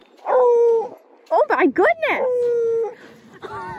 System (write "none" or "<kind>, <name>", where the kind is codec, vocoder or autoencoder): none